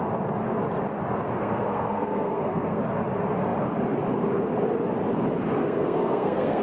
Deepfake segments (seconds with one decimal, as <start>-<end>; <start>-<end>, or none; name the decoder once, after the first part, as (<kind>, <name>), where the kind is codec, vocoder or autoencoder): 1.4-2.8 (codec, SNAC); 5.6-6.6

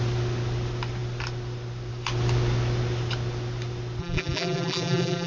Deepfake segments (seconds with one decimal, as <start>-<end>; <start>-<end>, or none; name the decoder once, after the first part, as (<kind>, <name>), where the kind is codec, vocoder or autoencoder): 4.0-5.3 (vocoder, BigVGAN v2)

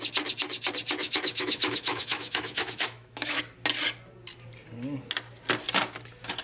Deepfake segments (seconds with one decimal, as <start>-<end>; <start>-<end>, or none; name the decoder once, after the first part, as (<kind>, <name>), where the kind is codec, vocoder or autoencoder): 1.0-3.4 (autoencoder, DAC-VAE)

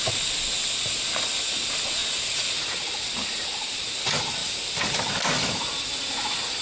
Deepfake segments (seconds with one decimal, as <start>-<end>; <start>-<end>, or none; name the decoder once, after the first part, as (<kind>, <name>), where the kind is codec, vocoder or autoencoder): none

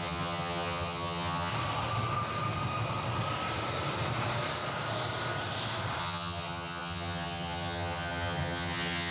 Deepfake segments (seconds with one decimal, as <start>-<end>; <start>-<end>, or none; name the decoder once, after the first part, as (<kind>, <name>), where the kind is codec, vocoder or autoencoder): 0.0-1.5 (vocoder, HiFi-GAN); 6.0-9.1